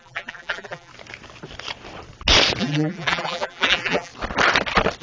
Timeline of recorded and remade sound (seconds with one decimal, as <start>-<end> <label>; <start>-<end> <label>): 0.0-0.9 remade; 0.9-2.6 recorded; 2.6-4.1 remade; 4.1-5.0 recorded